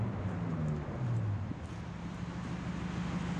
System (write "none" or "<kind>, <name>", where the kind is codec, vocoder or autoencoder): none